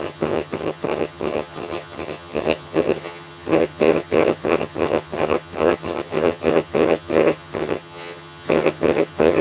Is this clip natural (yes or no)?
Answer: no